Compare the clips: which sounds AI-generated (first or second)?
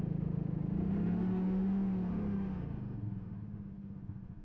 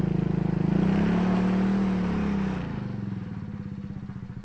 first